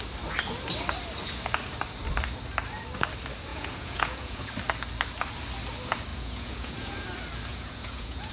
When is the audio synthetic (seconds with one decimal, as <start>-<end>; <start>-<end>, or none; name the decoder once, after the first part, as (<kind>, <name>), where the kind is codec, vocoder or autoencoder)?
3.5-4.5 (vocoder, Vocos); 6.1-7.0; 7.5-8.3